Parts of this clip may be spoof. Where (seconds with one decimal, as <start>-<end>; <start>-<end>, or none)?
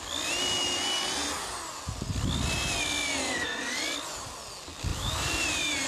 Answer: 4.9-5.9